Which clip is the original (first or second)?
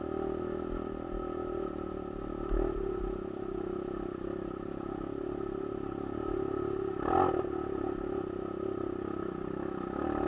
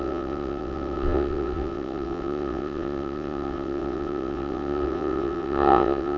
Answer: first